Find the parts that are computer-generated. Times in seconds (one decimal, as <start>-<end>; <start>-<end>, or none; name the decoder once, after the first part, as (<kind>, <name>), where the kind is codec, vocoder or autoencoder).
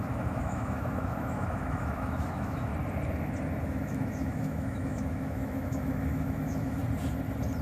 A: 0.0-2.7 (autoencoder, DAC-VAE); 3.6-6.8